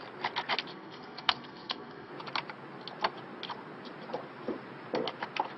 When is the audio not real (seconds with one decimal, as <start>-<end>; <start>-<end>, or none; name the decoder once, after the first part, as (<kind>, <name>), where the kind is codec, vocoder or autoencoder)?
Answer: 0.7-2.1 (codec, SNAC)